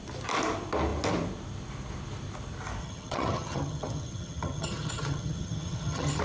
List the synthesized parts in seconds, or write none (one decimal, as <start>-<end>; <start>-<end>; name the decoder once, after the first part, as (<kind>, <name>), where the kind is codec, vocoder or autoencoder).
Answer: 2.8-6.2 (vocoder, HiFi-GAN)